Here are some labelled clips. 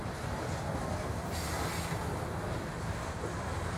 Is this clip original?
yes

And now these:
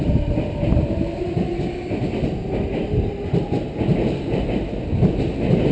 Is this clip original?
yes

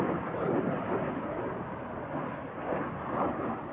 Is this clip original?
yes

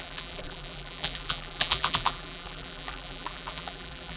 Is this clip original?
no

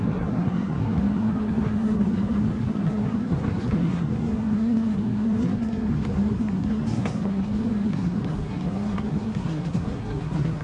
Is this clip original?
no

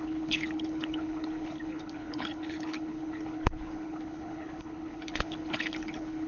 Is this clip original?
no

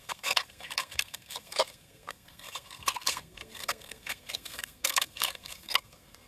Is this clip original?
no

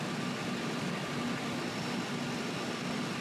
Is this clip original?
yes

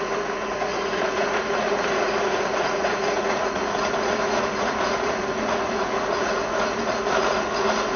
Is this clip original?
no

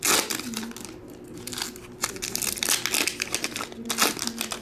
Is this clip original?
yes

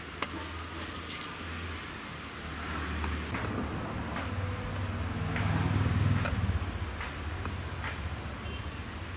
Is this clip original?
yes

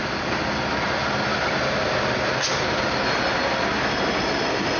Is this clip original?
yes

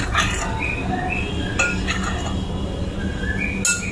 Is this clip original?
yes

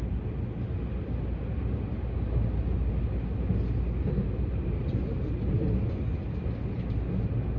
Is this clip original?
yes